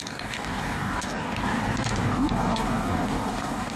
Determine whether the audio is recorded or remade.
remade